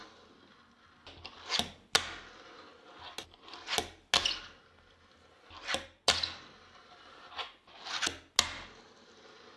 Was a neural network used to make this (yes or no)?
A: no